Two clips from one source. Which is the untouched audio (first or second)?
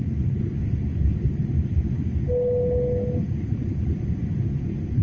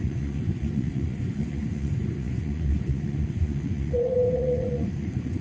first